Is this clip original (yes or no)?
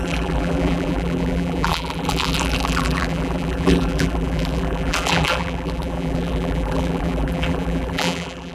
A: no